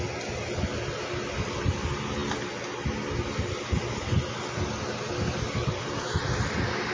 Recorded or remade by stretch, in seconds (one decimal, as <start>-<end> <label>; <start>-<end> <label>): 0.0-6.9 recorded